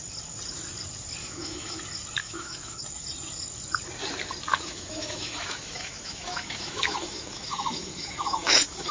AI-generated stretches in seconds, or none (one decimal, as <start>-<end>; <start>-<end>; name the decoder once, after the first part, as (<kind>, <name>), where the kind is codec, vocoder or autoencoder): 1.2-1.8 (autoencoder, DAC-VAE); 2.2-2.8; 4.5-8.9